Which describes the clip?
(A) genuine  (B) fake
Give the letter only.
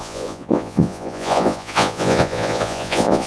B